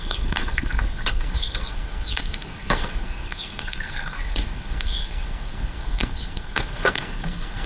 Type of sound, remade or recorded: remade